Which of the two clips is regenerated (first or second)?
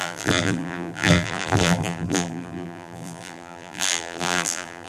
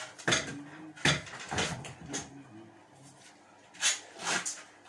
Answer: first